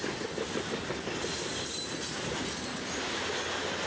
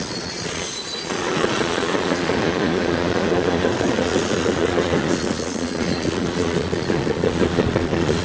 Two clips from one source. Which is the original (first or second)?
first